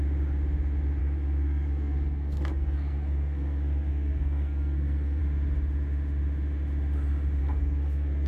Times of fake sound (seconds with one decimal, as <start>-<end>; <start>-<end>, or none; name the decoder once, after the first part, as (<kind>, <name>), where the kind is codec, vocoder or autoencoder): 1.0-5.2 (codec, SNAC); 7.4-8.3